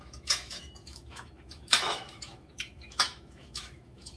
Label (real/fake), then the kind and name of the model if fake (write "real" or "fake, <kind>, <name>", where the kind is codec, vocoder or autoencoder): fake, autoencoder, DAC-VAE